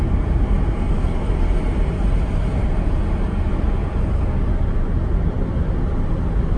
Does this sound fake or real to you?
real